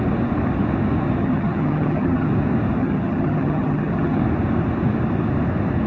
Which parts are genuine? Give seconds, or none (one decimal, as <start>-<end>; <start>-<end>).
0.0-1.2; 2.3-2.8; 4.2-5.9